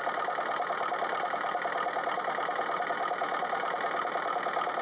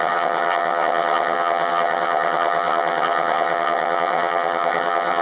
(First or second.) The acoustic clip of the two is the first